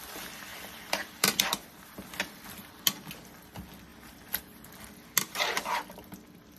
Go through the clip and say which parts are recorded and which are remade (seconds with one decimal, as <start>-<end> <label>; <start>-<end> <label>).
0.0-0.5 recorded; 0.5-2.8 remade; 2.8-3.9 recorded; 3.9-4.4 remade; 4.4-6.6 recorded